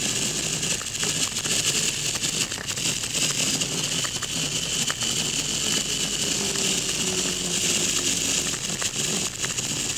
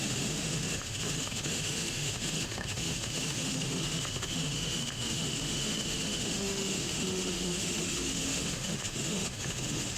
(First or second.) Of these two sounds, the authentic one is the first